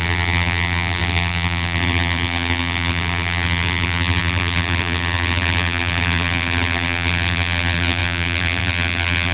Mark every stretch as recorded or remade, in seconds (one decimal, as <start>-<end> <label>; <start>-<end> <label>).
0.0-9.3 remade